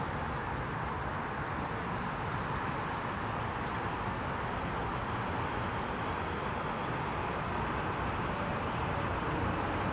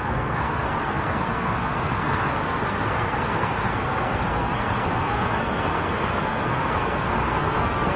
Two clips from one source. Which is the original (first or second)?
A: first